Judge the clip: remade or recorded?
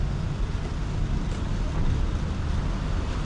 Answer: recorded